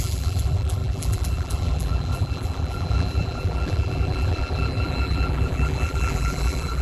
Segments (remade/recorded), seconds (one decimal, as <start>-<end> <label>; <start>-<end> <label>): 0.0-6.8 remade

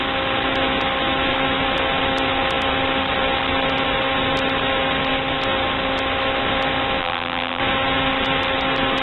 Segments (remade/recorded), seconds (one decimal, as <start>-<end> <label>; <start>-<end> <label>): 0.0-7.0 recorded; 7.0-7.6 remade; 7.6-9.0 recorded

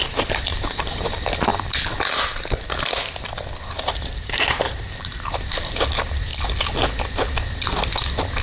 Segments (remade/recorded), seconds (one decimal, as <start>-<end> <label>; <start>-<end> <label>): 0.0-1.5 remade; 1.5-3.9 recorded; 3.9-6.3 remade; 6.3-8.4 recorded

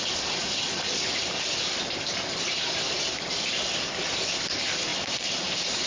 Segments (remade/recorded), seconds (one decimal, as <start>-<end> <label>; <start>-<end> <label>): 0.0-4.9 recorded; 4.9-5.5 remade; 5.5-5.9 recorded

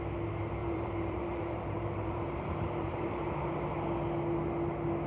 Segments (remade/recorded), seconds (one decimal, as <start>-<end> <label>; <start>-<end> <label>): 0.0-0.6 recorded; 0.6-3.7 remade; 3.7-5.1 recorded

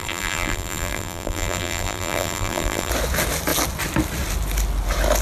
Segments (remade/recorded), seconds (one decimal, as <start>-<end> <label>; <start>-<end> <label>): 0.0-2.9 remade; 2.9-5.2 recorded